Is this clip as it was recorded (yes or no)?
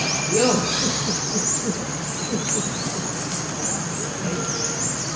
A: yes